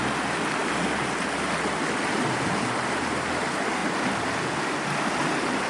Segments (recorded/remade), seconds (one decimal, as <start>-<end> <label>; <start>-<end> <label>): 0.0-5.7 recorded